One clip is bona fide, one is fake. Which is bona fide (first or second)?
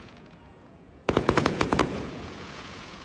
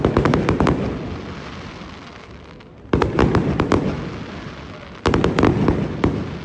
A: second